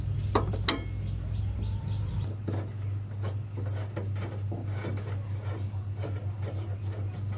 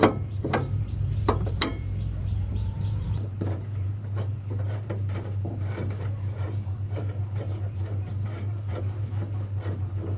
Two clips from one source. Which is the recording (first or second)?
first